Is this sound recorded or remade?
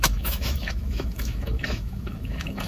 remade